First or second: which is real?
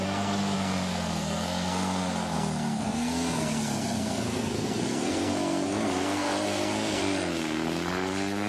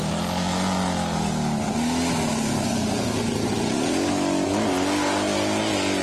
second